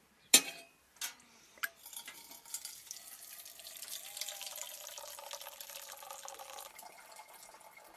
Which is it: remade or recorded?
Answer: recorded